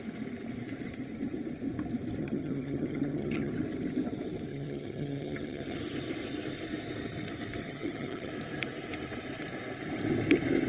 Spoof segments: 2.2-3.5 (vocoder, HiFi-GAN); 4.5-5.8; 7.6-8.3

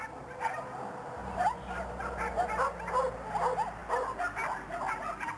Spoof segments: 1.2-2.5 (vocoder, BigVGAN v2)

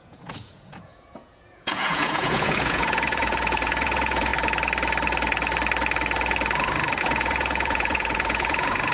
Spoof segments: 0.0-4.3 (vocoder, Vocos); 7.0-8.9

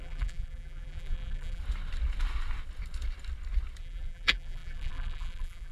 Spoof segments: 0.0-1.6 (vocoder, BigVGAN v2); 3.8-5.7